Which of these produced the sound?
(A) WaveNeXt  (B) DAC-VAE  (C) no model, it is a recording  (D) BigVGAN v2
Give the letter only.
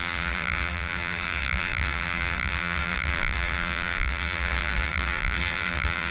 D